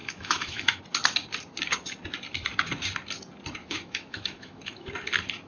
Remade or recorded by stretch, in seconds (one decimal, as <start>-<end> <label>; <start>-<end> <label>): 0.0-0.8 remade; 0.8-3.6 recorded; 3.6-4.9 remade; 4.9-5.5 recorded